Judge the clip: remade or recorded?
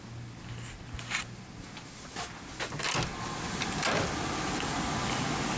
recorded